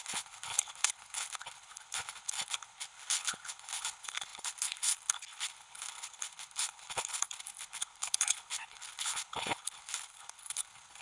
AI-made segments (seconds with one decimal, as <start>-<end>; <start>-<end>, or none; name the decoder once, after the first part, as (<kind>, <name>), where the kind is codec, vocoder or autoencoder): 0.0-11.0 (codec, HILCodec)